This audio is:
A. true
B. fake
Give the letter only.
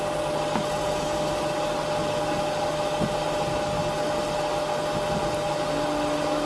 A